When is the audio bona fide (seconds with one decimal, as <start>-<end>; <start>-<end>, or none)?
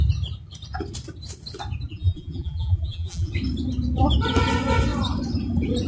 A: 0.0-1.9; 3.3-5.9